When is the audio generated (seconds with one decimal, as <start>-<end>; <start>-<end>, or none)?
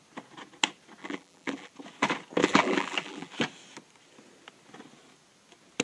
1.0-1.7; 2.4-3.3